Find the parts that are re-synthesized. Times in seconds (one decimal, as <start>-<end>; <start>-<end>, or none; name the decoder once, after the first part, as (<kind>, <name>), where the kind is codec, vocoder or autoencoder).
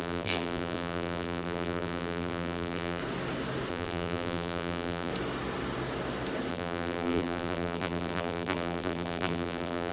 0.0-3.0 (vocoder, BigVGAN v2); 3.7-5.1; 6.5-9.9